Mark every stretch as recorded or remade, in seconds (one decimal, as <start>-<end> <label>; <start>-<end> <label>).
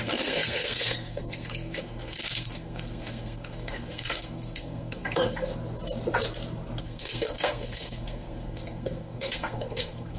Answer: 0.0-5.5 remade; 5.5-6.8 recorded; 6.8-10.2 remade